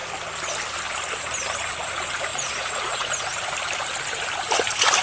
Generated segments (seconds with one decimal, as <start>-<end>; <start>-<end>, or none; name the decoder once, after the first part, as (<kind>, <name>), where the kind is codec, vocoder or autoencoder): 2.3-3.1 (vocoder, Vocos)